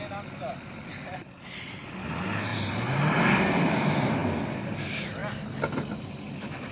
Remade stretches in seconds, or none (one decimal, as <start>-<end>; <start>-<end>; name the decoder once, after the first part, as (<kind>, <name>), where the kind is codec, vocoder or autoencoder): none